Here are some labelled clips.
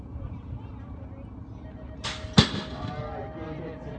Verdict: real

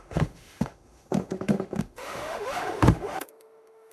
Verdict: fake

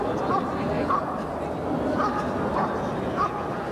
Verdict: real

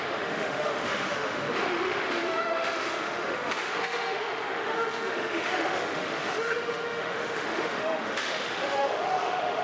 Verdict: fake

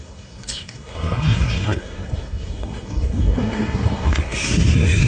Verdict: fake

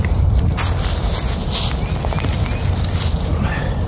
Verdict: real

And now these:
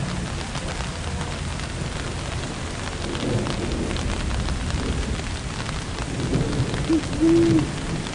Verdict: real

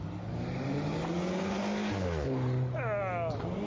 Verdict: real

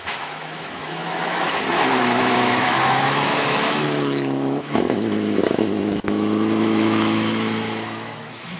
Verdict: fake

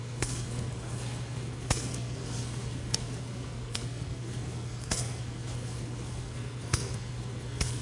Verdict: fake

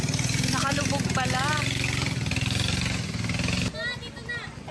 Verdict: real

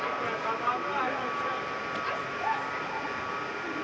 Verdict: real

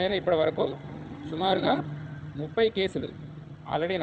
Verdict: fake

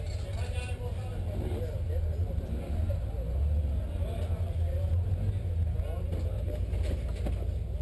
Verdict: real